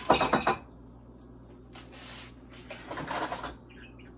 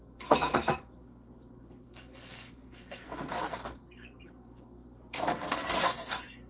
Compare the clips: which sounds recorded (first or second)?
first